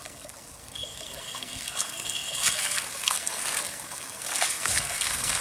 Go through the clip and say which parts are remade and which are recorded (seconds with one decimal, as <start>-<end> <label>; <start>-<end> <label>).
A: 0.0-5.4 remade